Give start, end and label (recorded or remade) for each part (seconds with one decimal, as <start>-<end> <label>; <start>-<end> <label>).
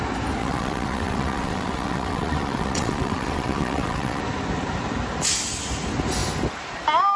0.0-0.4 recorded; 0.4-4.2 remade; 4.2-7.2 recorded